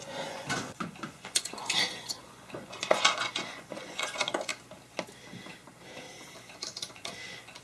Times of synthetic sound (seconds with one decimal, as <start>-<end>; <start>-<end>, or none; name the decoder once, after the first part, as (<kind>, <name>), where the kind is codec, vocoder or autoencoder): 0.0-4.5 (vocoder, Vocos); 6.8-7.6